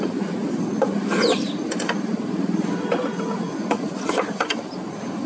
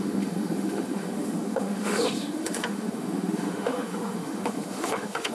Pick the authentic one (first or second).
first